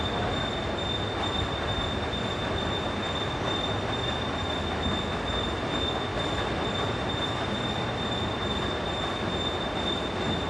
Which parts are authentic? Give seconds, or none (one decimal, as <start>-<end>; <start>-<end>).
0.0-10.5